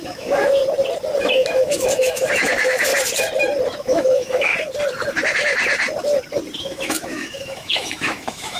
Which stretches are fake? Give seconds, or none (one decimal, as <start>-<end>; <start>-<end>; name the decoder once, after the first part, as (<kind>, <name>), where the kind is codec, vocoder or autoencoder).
0.0-0.6 (autoencoder, DAC-VAE); 1.2-2.9; 3.8-4.5; 6.6-8.6